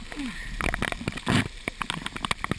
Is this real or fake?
real